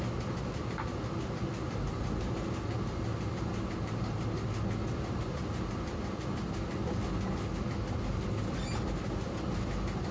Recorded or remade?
recorded